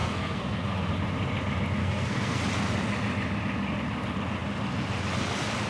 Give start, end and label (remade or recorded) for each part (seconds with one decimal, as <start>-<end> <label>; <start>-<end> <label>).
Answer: 0.0-0.9 remade; 0.9-1.8 recorded; 1.8-2.4 remade; 2.4-5.7 recorded